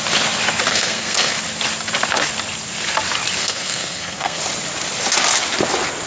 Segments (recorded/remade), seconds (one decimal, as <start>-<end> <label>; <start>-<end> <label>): 0.0-0.7 recorded; 0.7-1.3 remade; 1.3-3.4 recorded; 3.4-4.4 remade; 4.4-6.1 recorded